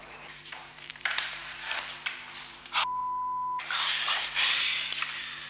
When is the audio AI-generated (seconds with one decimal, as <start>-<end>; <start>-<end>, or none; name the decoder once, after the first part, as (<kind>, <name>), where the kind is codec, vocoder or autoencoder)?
0.0-3.0 (vocoder, BigVGAN v2); 3.6-5.5